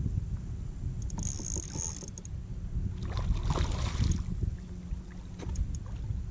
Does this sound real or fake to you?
real